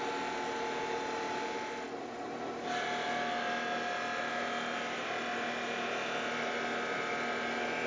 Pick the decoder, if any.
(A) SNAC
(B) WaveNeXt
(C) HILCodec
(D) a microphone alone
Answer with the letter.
D